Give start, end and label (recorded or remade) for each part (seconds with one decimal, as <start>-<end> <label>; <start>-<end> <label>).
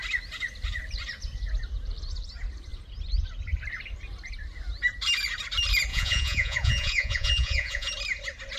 0.0-5.9 recorded; 5.9-7.9 remade; 7.9-8.6 recorded